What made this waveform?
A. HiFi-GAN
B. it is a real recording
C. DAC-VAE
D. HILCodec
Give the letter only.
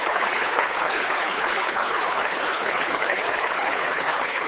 D